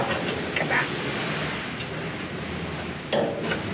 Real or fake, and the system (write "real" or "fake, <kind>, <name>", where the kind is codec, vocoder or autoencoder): real